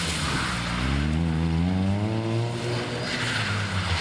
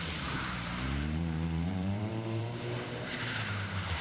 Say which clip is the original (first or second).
first